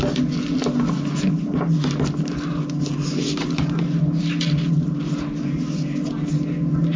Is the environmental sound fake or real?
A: real